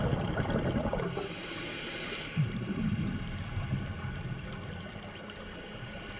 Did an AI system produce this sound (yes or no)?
no